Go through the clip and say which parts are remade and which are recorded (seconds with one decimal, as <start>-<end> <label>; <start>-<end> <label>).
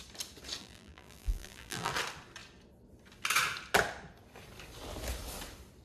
0.0-0.6 recorded; 0.6-1.9 remade; 1.9-5.8 recorded